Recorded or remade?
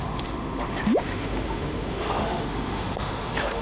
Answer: remade